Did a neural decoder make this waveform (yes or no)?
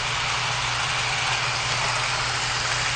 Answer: no